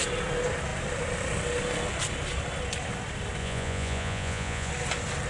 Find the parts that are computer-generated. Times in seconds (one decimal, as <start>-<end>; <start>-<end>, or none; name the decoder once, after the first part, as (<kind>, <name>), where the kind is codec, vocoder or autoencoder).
3.4-4.7 (vocoder, Vocos)